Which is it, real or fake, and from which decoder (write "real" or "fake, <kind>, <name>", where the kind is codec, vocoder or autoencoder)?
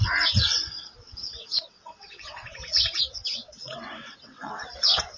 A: fake, vocoder, WaveNeXt